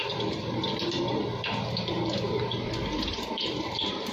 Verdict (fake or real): fake